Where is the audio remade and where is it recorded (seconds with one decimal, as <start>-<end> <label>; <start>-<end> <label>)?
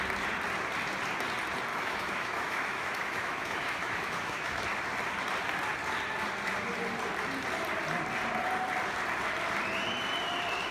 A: 0.0-1.7 recorded; 1.7-4.6 remade; 4.6-10.7 recorded